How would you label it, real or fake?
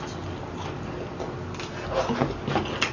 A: real